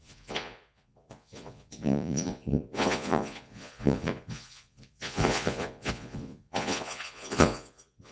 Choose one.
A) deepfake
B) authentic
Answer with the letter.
A